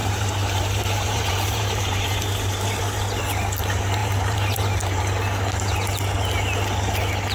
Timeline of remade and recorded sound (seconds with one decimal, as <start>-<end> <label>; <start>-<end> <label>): 0.0-3.2 remade; 3.2-4.0 recorded; 4.0-5.0 remade; 5.0-7.3 recorded